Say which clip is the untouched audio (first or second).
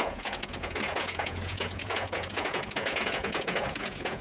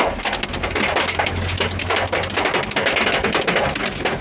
second